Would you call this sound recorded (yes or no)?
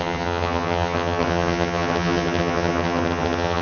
no